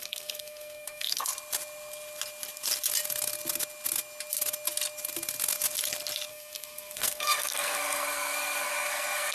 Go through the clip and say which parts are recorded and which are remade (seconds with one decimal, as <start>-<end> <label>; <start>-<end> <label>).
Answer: 0.0-1.3 remade; 1.3-6.3 recorded; 6.3-9.3 remade